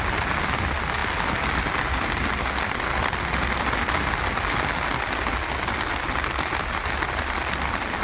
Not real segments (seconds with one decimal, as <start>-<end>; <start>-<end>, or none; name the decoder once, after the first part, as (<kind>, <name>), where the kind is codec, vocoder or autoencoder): none